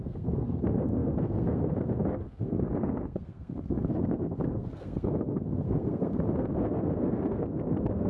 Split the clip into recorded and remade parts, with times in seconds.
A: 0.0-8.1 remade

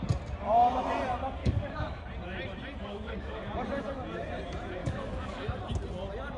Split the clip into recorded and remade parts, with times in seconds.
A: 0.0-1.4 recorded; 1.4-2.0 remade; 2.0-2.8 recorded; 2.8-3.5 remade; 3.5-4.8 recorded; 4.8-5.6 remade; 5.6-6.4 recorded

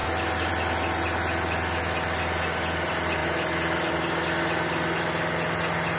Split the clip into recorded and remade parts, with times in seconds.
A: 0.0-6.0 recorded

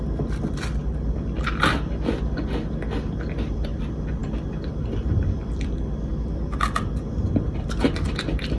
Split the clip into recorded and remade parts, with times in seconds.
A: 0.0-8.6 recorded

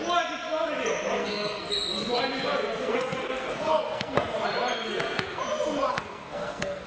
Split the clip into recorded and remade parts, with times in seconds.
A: 0.0-1.2 recorded; 1.2-1.7 remade; 1.7-2.8 recorded; 2.8-4.4 remade; 4.4-4.9 recorded; 4.9-5.4 remade; 5.4-5.9 recorded; 5.9-6.9 remade

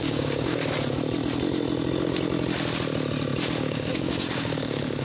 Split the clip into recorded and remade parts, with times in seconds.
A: 0.0-0.6 remade; 0.6-3.6 recorded; 3.6-5.0 remade